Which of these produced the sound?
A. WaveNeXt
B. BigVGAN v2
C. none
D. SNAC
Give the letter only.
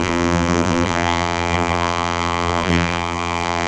B